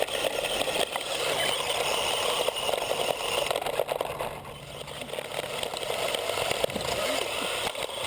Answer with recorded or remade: recorded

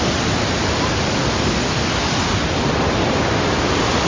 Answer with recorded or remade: recorded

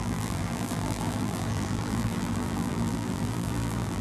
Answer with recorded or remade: remade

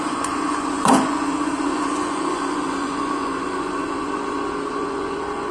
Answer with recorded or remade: remade